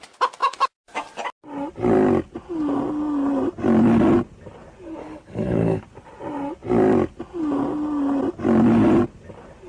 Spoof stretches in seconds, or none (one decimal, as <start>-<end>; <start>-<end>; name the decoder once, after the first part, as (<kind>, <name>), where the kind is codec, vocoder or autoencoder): 5.0-5.8 (codec, HILCodec)